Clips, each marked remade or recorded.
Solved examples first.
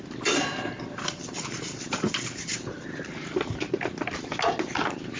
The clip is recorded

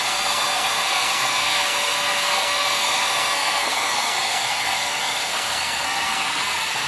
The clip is remade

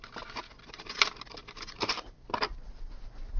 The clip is recorded